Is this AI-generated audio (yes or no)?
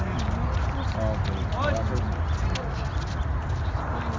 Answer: no